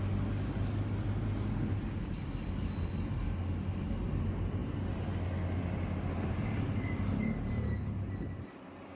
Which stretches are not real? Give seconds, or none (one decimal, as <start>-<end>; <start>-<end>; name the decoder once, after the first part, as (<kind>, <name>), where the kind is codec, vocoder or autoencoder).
none